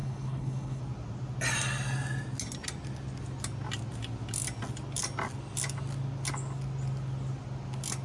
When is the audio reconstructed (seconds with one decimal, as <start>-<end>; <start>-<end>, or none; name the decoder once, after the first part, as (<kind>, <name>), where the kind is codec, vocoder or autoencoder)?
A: 0.0-0.8 (codec, HILCodec)